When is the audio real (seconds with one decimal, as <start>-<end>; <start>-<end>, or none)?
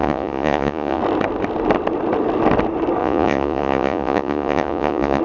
1.0-3.0